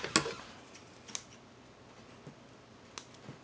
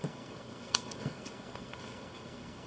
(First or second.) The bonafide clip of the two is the first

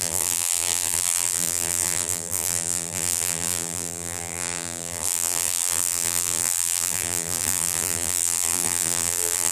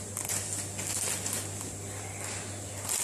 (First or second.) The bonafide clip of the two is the second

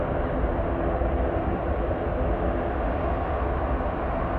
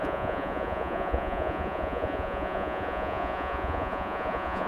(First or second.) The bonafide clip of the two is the first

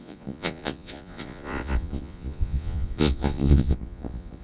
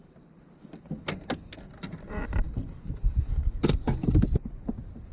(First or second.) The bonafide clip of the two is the second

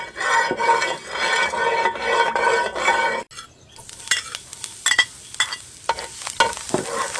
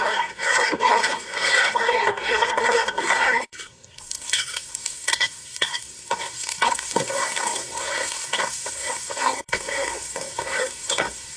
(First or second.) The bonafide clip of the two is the first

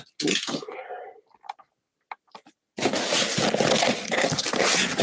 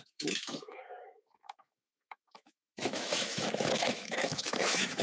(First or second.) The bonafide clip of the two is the first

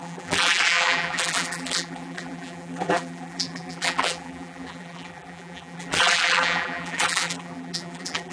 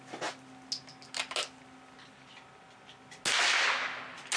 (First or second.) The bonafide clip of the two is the second